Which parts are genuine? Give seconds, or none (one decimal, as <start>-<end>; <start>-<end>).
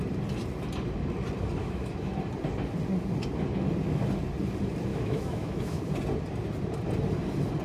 0.0-1.6; 2.1-4.9; 5.8-7.6